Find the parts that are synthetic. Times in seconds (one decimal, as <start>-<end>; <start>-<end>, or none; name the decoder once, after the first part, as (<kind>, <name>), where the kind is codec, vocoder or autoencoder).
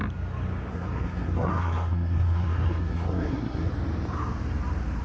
0.7-3.7 (codec, SNAC)